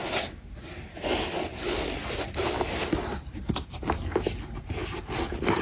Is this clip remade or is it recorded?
recorded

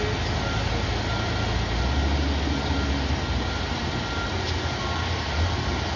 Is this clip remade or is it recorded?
recorded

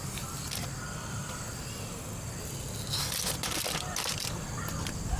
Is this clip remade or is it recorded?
recorded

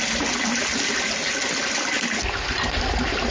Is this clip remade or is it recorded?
recorded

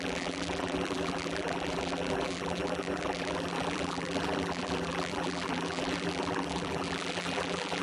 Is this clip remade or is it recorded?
remade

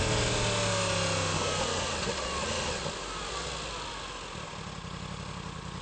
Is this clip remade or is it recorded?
recorded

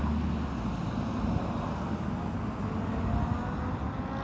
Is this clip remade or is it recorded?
recorded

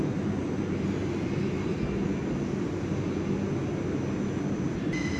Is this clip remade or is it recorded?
recorded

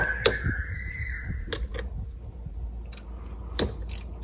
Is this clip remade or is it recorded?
recorded